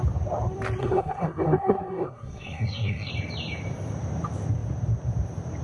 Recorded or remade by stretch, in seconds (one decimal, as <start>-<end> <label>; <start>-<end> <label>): 0.0-0.8 recorded; 0.8-3.1 remade; 3.1-5.6 recorded